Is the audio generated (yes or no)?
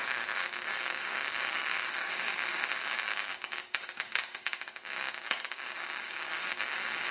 yes